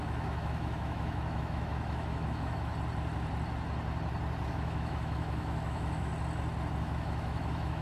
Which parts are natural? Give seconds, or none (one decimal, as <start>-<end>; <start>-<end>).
2.7-4.5; 6.1-6.8